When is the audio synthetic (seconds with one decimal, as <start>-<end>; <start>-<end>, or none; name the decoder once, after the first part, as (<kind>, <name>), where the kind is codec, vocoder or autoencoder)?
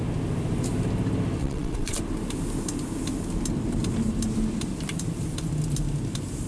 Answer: 1.4-2.0 (vocoder, WaveNeXt)